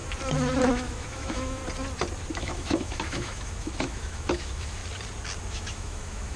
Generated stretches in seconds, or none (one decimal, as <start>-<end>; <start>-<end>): 0.7-1.6; 2.3-4.8; 5.5-6.4